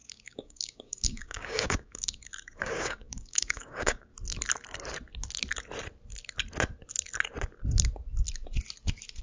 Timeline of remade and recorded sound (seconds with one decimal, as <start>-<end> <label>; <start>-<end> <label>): 0.0-4.1 remade; 4.1-9.2 recorded